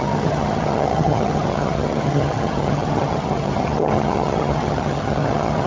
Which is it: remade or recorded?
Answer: remade